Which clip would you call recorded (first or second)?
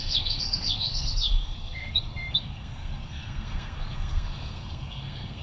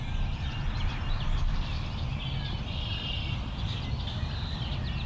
second